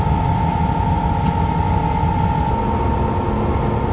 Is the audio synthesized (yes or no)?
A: no